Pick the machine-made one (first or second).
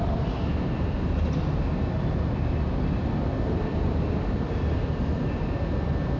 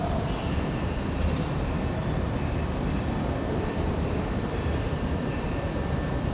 second